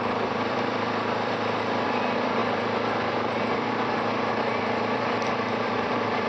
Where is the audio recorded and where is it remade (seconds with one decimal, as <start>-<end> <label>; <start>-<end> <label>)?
0.0-6.3 remade